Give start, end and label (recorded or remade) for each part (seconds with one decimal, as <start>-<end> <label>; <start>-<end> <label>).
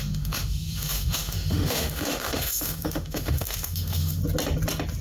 0.0-4.2 remade; 4.2-5.0 recorded